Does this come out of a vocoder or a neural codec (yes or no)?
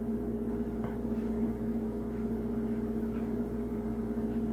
yes